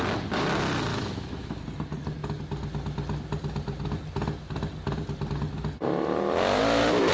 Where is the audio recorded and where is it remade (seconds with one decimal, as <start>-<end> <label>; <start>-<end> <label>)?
0.0-0.9 recorded; 0.9-1.6 remade; 1.6-7.1 recorded

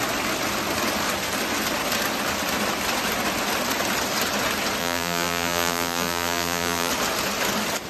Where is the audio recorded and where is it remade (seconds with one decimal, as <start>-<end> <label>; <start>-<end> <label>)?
0.0-4.8 recorded; 4.8-6.9 remade; 6.9-7.9 recorded

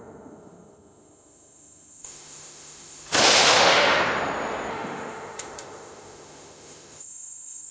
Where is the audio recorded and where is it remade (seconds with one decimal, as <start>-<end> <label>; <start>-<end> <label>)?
0.0-4.0 remade; 4.0-4.7 recorded; 4.7-7.7 remade

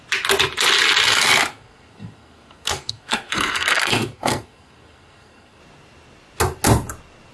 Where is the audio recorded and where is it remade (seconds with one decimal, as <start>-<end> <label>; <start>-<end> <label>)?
0.0-1.5 recorded; 1.5-5.6 remade; 5.6-7.3 recorded

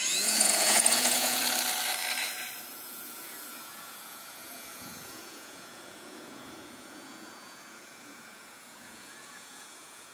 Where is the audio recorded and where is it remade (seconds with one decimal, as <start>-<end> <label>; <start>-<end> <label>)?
0.0-1.4 remade; 1.4-2.7 recorded; 2.7-10.1 remade